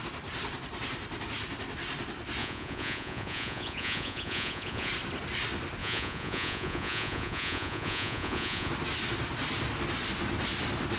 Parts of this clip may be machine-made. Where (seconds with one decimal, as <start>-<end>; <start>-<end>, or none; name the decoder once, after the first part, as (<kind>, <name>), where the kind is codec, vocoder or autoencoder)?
2.4-4.9 (vocoder, Vocos); 5.8-8.7